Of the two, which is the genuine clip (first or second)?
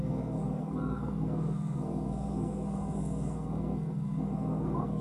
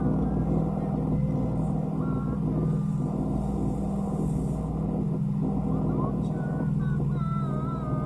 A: second